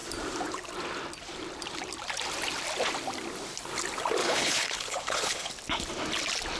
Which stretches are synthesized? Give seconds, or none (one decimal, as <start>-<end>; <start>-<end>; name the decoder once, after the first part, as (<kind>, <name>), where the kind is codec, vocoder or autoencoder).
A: 4.2-5.5 (codec, HILCodec)